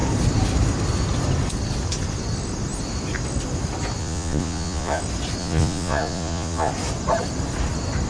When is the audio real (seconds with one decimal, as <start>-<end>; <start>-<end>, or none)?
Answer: 0.0-4.0; 5.0-5.4; 6.7-8.1